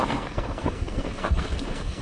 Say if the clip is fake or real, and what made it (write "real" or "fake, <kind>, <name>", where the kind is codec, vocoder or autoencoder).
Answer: fake, codec, SNAC